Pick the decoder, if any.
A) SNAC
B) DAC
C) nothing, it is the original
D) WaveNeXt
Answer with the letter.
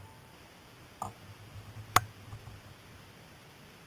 C